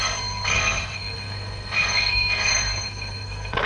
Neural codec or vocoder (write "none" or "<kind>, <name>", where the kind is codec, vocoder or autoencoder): codec, SNAC